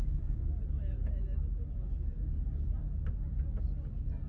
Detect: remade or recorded recorded